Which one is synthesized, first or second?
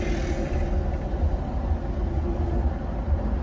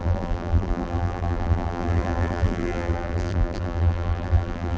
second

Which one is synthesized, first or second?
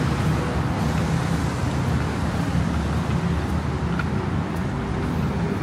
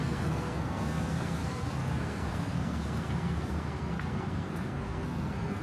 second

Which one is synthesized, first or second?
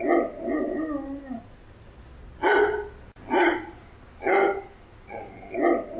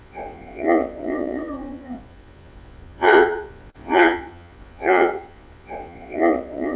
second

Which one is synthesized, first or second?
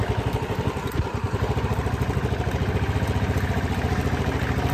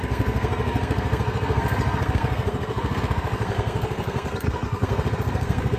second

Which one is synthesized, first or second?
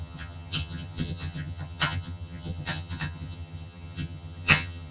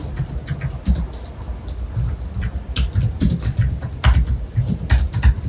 first